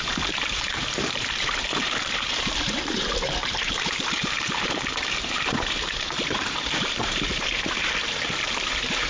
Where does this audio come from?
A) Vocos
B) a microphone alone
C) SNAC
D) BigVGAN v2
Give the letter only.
D